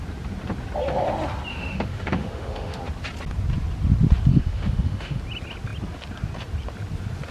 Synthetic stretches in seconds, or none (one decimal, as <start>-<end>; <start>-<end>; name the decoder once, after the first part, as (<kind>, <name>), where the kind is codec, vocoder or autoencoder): 1.5-2.8 (autoencoder, DAC-VAE); 4.3-5.2